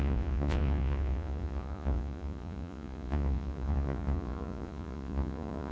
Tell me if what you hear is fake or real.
fake